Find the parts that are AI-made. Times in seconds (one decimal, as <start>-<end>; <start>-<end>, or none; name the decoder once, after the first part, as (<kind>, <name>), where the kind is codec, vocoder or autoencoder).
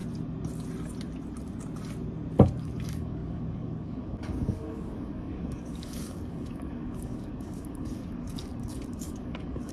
2.6-9.7 (codec, DAC)